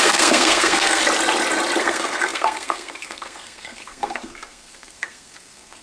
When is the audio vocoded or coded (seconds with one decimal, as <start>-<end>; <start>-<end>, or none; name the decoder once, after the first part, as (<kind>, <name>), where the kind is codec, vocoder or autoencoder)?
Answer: 0.0-1.0 (codec, SNAC); 1.8-5.8